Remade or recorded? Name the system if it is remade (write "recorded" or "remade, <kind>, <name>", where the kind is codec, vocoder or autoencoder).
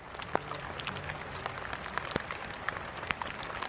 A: recorded